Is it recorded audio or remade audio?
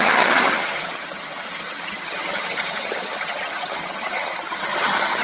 remade